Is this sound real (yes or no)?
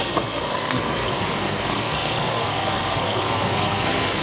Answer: no